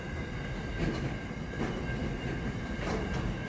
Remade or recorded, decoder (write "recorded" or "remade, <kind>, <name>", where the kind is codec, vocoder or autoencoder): recorded